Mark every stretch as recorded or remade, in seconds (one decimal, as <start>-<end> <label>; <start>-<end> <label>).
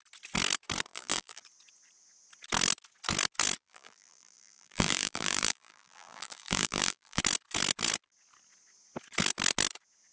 0.0-0.9 recorded; 0.9-1.4 remade; 1.4-3.6 recorded; 3.6-7.2 remade; 7.2-10.1 recorded